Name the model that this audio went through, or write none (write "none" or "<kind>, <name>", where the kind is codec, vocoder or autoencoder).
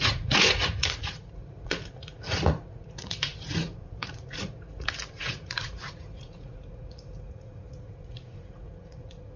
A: vocoder, Vocos